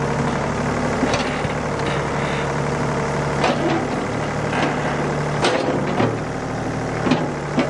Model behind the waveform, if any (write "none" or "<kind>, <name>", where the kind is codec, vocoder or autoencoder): none